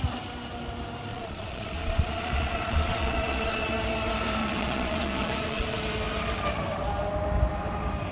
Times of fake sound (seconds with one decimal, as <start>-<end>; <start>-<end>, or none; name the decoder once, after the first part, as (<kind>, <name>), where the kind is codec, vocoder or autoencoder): 1.1-3.7 (vocoder, Vocos); 4.4-5.8